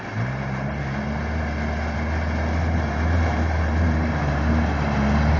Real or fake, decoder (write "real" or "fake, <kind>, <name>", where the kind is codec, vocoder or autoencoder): real